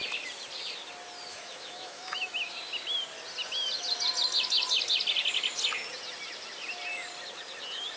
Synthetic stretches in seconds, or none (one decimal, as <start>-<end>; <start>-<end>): 1.3-2.5